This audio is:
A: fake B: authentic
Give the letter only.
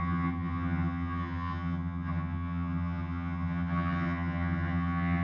A